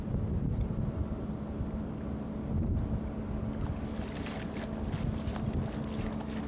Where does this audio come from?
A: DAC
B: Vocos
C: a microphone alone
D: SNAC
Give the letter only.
C